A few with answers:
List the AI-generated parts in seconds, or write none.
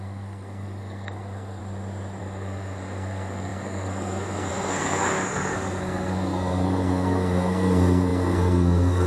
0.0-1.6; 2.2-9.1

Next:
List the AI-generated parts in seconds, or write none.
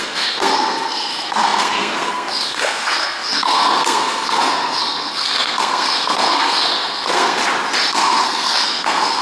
0.0-7.4; 7.9-9.2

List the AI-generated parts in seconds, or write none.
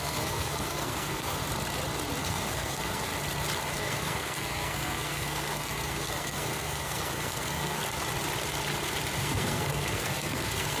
0.0-1.4; 2.2-3.1; 3.7-7.8; 9.2-10.8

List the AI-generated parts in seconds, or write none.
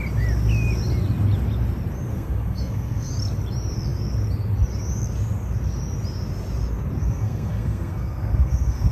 2.1-3.1; 7.0-8.9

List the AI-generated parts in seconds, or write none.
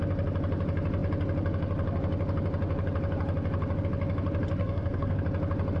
4.6-5.2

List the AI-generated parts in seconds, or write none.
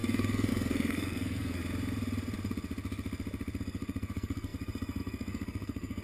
0.0-1.6; 3.6-6.0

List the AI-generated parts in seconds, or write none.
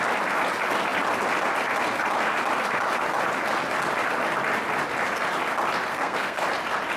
5.9-6.4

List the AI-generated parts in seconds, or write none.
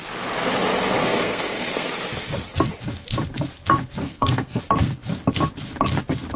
1.0-1.9; 4.0-4.6